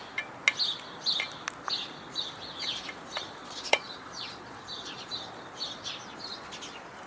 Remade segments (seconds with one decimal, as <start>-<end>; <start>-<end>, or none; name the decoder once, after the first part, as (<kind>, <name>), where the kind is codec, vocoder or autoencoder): 3.4-5.1 (vocoder, Vocos)